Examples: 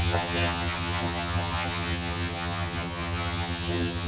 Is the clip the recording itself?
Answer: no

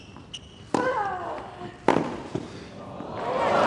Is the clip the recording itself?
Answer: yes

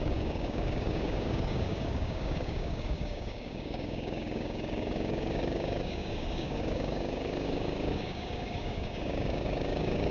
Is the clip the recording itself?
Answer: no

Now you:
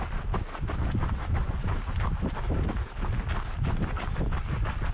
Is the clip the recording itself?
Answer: yes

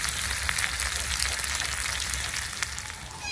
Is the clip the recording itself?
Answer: yes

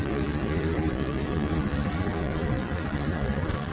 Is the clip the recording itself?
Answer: no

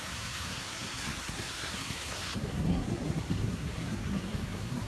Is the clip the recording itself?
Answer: no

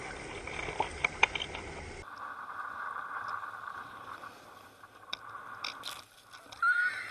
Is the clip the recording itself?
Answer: yes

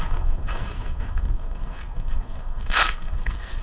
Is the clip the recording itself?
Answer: no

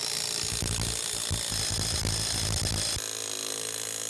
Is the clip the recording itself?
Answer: yes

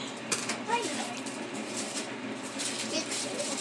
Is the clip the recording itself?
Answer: no